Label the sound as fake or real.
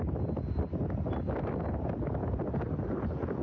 real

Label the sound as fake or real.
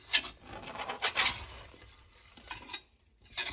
real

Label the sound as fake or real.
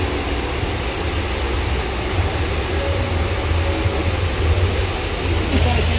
real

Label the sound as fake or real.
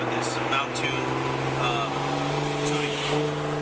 real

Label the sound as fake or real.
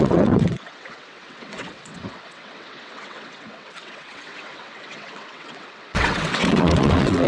fake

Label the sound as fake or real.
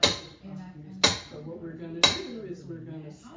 real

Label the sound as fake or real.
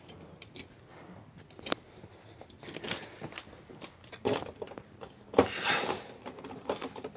real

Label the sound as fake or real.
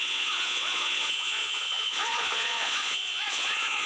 fake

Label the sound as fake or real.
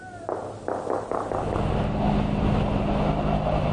real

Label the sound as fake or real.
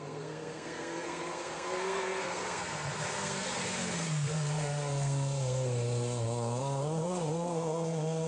fake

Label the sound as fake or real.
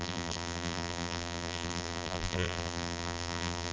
fake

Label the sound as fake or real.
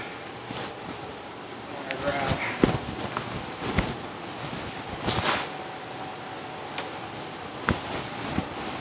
real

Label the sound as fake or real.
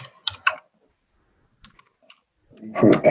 real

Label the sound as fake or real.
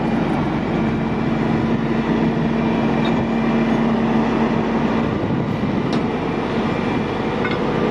real